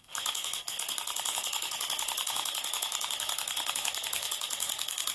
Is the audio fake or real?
fake